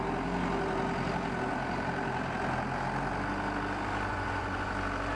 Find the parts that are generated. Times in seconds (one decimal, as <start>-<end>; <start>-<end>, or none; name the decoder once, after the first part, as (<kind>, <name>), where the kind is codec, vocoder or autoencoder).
4.1-4.7 (vocoder, Vocos)